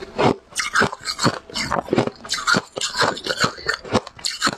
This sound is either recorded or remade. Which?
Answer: recorded